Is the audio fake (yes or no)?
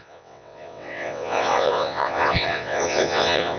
yes